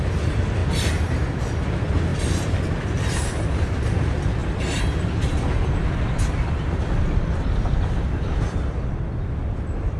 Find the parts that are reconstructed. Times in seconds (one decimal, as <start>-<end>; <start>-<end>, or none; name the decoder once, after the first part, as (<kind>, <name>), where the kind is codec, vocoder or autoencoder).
none